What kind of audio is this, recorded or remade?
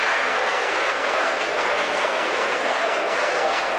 remade